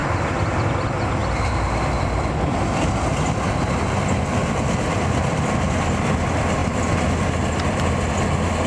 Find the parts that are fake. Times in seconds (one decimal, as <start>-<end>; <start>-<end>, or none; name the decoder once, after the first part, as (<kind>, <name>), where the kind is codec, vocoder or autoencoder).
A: 0.0-0.7 (vocoder, BigVGAN v2); 1.2-2.9; 4.4-5.7